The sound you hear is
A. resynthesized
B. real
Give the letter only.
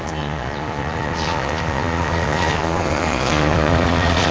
A